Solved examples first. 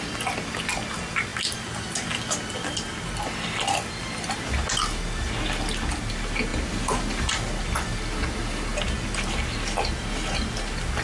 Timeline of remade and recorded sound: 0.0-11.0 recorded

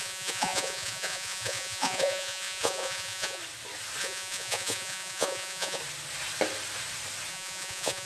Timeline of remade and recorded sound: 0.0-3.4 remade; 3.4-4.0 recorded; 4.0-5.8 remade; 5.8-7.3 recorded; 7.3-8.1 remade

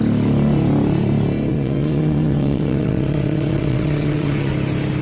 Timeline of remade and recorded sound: 0.0-1.5 recorded; 1.5-4.5 remade; 4.5-5.0 recorded